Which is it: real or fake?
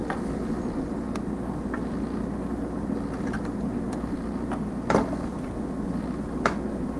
real